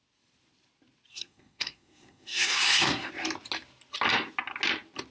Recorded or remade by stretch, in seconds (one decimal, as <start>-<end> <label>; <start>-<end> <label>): 0.0-1.1 recorded; 1.1-3.1 remade; 3.1-5.1 recorded